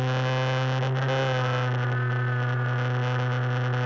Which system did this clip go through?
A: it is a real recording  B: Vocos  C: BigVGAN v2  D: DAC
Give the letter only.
A